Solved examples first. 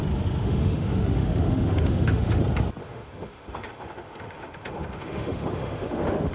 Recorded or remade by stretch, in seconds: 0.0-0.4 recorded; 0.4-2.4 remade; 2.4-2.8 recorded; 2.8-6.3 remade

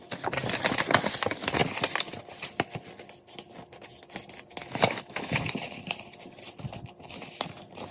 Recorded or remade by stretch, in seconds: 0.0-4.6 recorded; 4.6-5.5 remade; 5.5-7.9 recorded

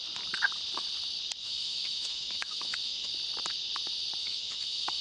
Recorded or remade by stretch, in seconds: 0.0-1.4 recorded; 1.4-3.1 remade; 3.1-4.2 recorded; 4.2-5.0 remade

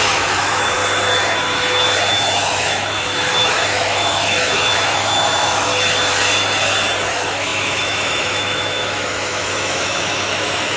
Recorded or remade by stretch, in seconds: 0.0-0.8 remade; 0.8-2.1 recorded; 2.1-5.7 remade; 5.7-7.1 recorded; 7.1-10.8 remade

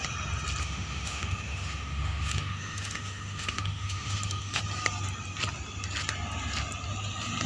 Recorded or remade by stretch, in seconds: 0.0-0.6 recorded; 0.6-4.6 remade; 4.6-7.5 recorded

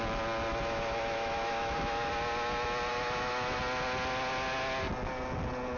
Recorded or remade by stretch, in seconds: 0.0-0.5 recorded; 0.5-2.1 remade; 2.1-2.9 recorded; 2.9-3.6 remade; 3.6-5.8 recorded

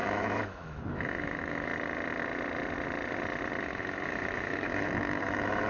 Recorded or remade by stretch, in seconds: 0.0-1.7 remade; 1.7-3.6 recorded; 3.6-5.7 remade

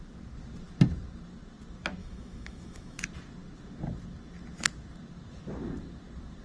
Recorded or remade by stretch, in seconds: 0.0-2.0 recorded; 2.0-3.0 remade; 3.0-6.4 recorded